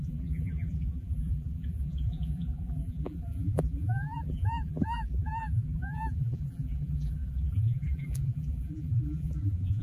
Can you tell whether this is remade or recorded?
remade